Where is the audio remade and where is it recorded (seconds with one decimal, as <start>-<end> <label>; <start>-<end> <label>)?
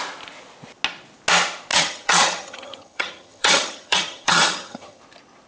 0.0-1.7 recorded; 1.7-5.0 remade; 5.0-5.5 recorded